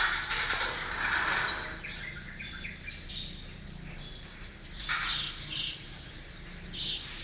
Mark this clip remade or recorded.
recorded